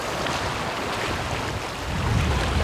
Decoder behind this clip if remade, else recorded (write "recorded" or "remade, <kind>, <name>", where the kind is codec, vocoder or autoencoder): recorded